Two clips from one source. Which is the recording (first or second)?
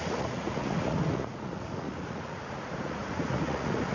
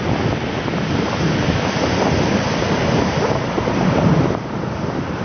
second